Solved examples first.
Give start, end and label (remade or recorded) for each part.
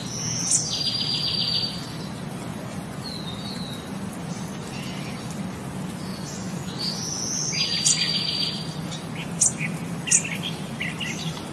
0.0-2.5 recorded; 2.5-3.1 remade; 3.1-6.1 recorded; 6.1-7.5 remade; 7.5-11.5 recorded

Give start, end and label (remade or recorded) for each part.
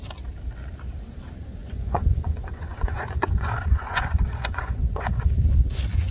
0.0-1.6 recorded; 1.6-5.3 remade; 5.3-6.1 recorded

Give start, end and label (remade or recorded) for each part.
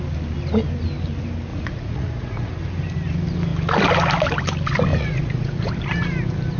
0.0-1.5 recorded; 1.5-2.5 remade; 2.5-4.9 recorded; 4.9-5.7 remade; 5.7-6.6 recorded